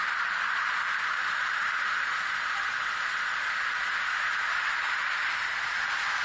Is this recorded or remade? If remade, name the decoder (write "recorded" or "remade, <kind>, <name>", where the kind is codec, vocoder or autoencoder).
recorded